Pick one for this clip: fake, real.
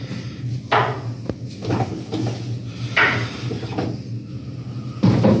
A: real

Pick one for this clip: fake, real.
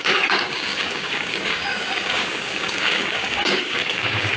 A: fake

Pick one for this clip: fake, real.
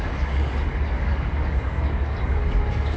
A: fake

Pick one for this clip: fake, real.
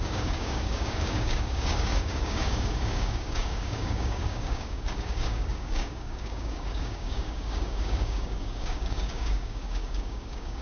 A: fake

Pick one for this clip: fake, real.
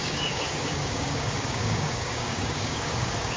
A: fake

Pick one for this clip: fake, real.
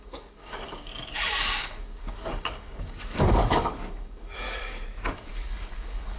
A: fake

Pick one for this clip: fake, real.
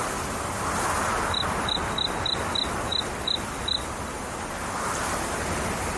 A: real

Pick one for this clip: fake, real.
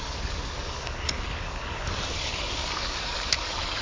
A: fake